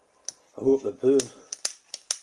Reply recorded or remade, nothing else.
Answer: recorded